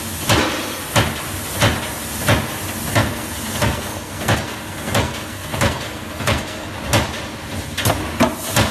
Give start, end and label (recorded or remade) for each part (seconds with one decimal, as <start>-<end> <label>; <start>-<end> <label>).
0.0-2.9 recorded; 2.9-6.7 remade; 6.7-8.7 recorded